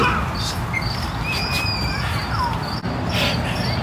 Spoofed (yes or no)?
no